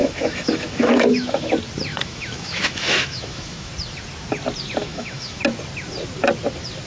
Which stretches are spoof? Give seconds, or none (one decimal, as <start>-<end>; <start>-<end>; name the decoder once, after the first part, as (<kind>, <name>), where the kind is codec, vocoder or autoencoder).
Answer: 0.0-1.5 (autoencoder, DAC-VAE); 1.9-3.7; 4.8-5.4